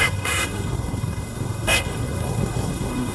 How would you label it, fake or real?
fake